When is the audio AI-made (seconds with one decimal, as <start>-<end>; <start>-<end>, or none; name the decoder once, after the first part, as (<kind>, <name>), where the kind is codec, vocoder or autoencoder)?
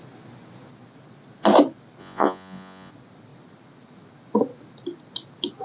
2.0-2.9 (vocoder, Vocos)